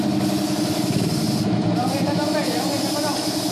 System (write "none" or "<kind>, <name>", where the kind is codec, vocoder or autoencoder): none